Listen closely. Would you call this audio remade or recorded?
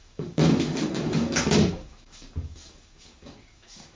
remade